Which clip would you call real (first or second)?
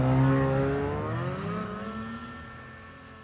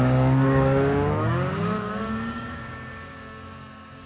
first